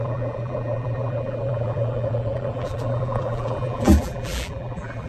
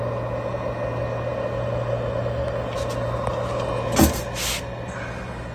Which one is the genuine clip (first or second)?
second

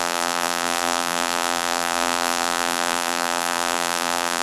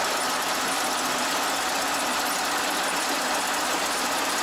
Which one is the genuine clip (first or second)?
second